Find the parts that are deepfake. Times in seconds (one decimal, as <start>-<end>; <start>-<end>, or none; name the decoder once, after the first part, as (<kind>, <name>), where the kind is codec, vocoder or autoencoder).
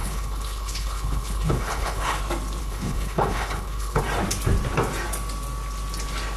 0.0-2.2 (codec, HILCodec); 2.6-4.0